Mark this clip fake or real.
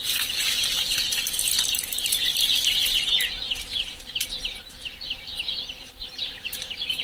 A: real